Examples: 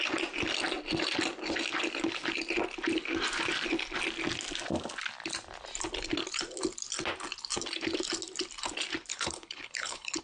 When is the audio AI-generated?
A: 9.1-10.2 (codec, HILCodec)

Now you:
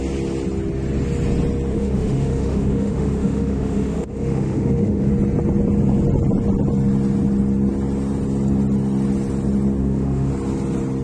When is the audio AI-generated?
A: 1.7-5.1 (autoencoder, DAC-VAE); 9.8-10.3